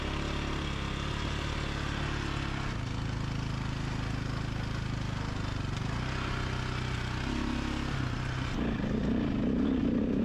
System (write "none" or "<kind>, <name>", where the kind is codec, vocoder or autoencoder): none